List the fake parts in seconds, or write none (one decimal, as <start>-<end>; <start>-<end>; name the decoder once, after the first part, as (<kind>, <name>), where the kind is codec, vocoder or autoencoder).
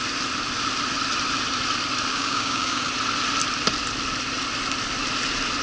2.1-2.9 (codec, DAC)